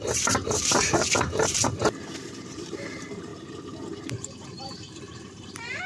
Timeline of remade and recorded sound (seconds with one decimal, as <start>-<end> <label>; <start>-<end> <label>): 0.0-1.8 remade; 1.8-2.7 recorded; 2.7-3.3 remade; 3.3-3.9 recorded; 3.9-5.9 remade